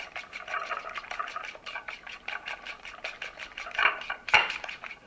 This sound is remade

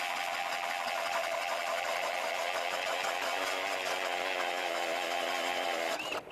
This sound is recorded